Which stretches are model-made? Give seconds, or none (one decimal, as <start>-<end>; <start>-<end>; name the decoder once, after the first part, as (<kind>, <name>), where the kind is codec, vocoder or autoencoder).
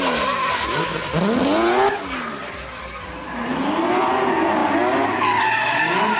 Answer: 2.7-4.1 (vocoder, BigVGAN v2)